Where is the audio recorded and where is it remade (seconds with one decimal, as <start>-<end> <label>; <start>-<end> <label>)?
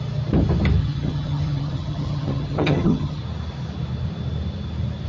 0.0-0.8 recorded; 0.8-3.2 remade; 3.2-5.1 recorded